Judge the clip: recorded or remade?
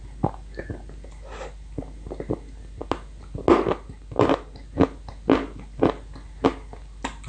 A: recorded